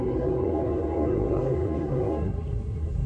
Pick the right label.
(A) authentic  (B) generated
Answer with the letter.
B